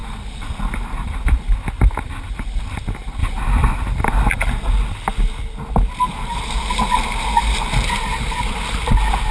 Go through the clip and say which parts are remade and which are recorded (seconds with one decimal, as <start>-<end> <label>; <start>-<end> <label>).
0.0-1.2 remade; 1.2-3.2 recorded; 3.2-4.3 remade; 4.3-9.3 recorded